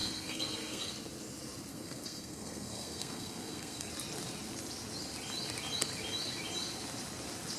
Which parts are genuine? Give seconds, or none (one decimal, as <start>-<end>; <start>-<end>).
0.9-1.7; 3.9-7.6